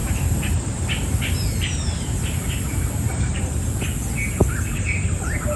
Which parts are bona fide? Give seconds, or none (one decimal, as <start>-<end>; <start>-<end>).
3.4-5.6